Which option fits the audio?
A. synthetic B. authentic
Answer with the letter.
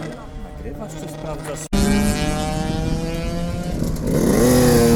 B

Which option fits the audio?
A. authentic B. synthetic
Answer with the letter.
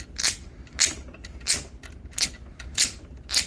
A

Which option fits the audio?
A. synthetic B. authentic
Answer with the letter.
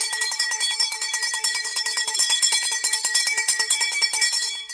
A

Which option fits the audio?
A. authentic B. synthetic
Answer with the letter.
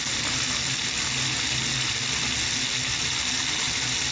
A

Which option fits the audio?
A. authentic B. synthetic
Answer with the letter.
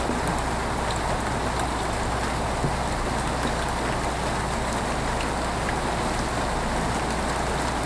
A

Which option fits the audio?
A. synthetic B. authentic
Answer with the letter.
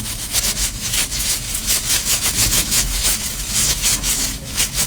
A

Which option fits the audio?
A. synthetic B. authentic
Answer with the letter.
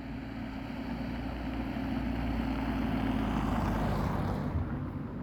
B